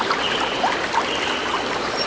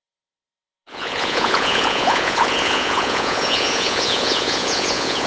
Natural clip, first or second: first